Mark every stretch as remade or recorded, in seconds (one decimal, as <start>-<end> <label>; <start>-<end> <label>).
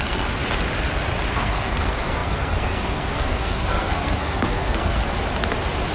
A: 0.0-0.4 remade; 0.4-1.3 recorded; 1.3-5.0 remade; 5.0-5.9 recorded